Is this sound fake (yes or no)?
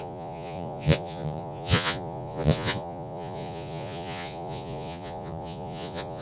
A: yes